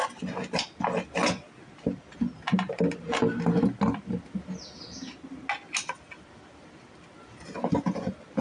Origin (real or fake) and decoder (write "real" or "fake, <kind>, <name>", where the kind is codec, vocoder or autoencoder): real